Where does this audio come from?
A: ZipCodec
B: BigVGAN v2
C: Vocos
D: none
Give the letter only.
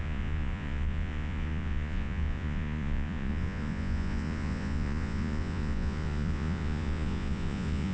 C